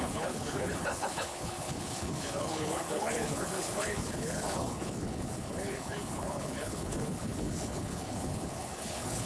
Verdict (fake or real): fake